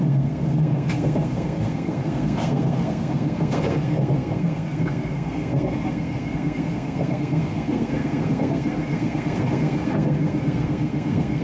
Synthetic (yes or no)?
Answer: yes